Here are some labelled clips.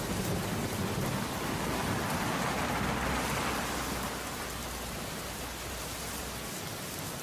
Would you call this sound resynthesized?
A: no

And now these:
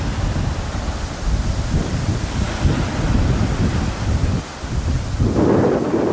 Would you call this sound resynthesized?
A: no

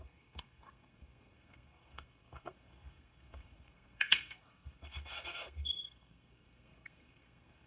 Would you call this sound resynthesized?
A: yes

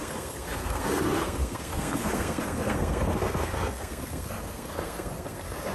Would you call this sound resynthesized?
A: yes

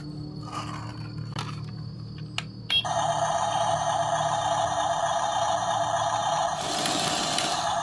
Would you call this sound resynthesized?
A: no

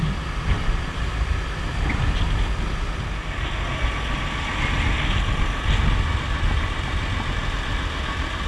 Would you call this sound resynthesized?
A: no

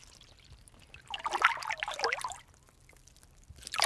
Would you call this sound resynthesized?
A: no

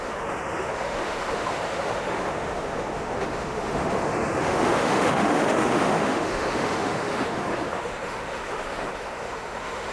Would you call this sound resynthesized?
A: yes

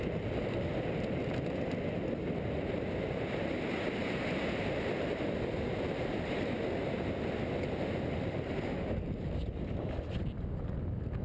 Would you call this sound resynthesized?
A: no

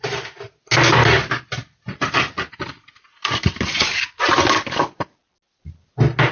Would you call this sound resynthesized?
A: no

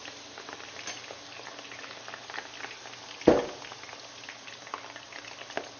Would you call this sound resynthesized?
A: no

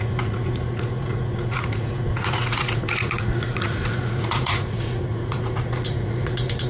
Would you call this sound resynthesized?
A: yes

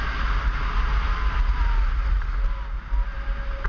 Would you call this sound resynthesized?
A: no